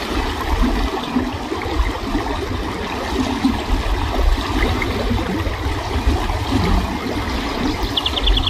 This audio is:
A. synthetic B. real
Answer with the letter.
B